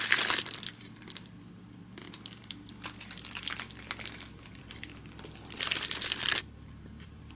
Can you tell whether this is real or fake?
fake